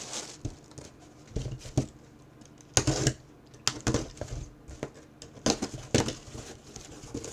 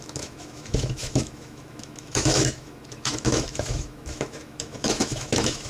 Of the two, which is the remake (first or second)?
second